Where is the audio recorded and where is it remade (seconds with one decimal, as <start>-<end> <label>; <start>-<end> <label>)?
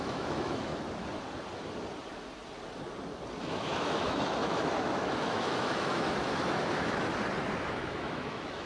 0.0-0.7 remade; 0.7-3.4 recorded; 3.4-7.1 remade; 7.1-7.6 recorded; 7.6-8.7 remade